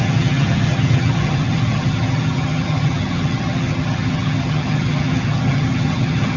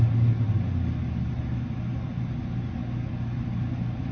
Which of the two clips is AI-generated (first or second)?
first